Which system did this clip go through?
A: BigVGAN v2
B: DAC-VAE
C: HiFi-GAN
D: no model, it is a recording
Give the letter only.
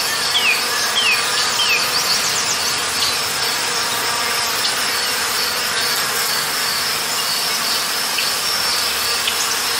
D